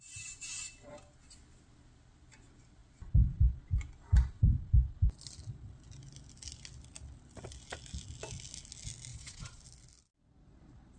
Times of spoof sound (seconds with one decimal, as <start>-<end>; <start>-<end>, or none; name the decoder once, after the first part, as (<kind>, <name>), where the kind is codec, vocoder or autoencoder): 9.1-9.6 (vocoder, WaveNeXt)